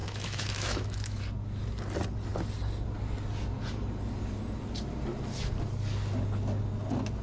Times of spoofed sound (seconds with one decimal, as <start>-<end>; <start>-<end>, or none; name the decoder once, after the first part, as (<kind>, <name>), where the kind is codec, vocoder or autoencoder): 0.0-1.2 (autoencoder, DAC-VAE)